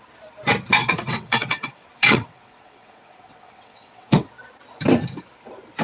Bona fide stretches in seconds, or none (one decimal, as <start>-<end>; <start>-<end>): 0.0-0.8; 4.3-5.8